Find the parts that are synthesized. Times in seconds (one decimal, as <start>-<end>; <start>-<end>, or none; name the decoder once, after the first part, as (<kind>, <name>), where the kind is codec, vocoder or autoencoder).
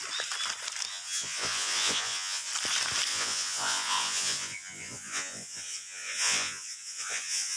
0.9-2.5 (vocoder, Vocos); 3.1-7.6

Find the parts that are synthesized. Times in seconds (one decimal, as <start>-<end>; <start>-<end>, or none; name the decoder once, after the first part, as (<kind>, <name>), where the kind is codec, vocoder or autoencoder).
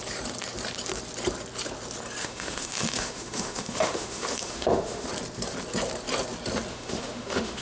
2.2-5.1 (autoencoder, DAC-VAE); 6.7-7.6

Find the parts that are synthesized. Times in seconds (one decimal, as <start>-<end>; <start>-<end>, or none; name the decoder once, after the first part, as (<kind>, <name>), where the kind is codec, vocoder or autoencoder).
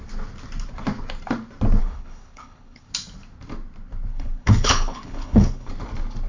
1.8-2.9 (codec, HILCodec); 4.1-5.7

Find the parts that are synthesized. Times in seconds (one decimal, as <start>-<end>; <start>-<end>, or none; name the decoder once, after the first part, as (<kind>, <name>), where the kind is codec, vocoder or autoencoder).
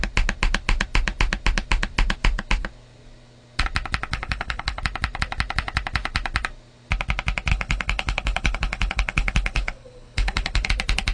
4.1-4.8 (codec, HILCodec); 7.5-10.7